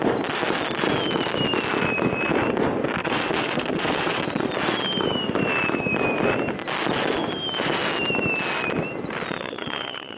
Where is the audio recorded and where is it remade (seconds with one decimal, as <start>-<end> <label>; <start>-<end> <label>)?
0.0-3.0 recorded; 3.0-4.5 remade; 4.5-9.3 recorded; 9.3-10.2 remade